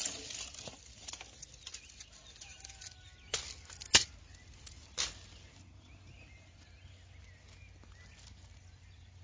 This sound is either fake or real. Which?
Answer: real